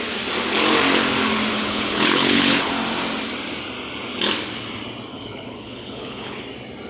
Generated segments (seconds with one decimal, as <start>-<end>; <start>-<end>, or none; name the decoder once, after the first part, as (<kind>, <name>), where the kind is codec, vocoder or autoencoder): 1.5-2.7 (codec, HILCodec); 5.1-6.4